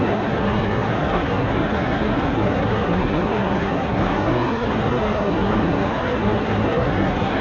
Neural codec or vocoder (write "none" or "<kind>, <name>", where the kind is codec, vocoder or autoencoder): codec, SNAC